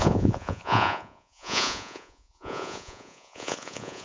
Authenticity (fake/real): fake